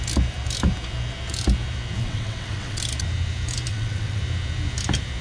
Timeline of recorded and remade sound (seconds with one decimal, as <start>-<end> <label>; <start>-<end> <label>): 0.0-2.0 recorded; 2.0-2.8 remade; 2.8-3.7 recorded; 3.7-4.2 remade; 4.2-5.2 recorded